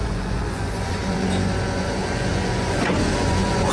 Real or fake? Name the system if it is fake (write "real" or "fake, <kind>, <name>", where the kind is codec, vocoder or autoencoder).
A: fake, vocoder, Vocos